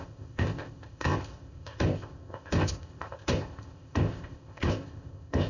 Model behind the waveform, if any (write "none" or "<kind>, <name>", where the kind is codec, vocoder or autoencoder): codec, ZipCodec